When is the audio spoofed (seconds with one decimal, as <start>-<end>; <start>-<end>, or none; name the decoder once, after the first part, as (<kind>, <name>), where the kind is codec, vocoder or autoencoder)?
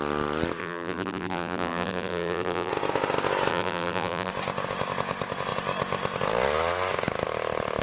0.6-2.7 (vocoder, BigVGAN v2); 3.5-4.3